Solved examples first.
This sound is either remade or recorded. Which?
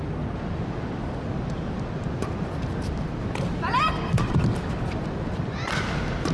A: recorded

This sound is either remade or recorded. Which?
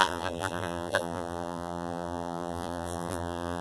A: remade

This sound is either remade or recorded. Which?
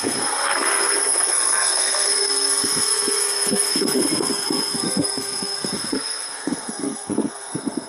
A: remade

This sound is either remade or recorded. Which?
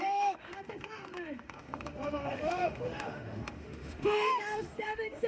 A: remade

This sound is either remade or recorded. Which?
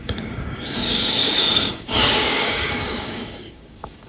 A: remade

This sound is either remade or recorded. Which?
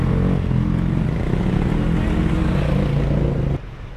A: recorded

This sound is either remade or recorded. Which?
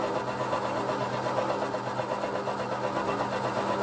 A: recorded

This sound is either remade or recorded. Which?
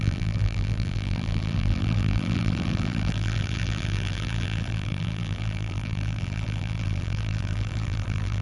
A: remade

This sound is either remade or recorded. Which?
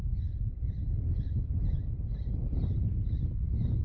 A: recorded